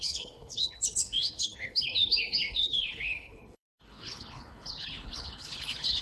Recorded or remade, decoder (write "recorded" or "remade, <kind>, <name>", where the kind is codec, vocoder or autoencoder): remade, codec, HILCodec